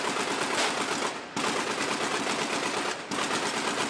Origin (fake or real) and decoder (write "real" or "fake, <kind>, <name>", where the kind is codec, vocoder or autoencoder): real